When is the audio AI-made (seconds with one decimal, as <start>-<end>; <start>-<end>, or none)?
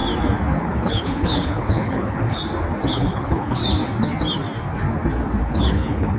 0.6-2.4; 2.9-3.6; 5.4-6.2